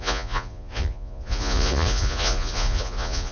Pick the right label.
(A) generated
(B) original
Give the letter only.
A